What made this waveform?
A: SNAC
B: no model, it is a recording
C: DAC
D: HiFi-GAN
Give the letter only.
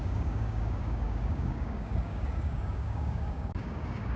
C